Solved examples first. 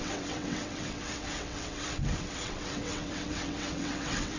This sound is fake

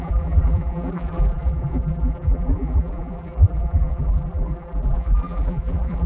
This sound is fake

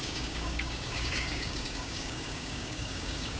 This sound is fake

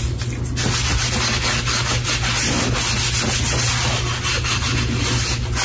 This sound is real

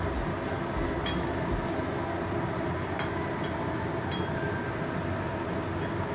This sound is real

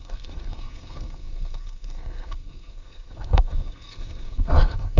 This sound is fake